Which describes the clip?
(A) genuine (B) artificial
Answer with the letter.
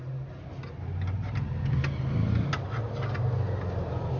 A